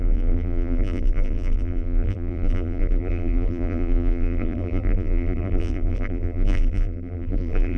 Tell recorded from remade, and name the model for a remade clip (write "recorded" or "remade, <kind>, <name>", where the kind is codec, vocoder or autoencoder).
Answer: remade, vocoder, BigVGAN v2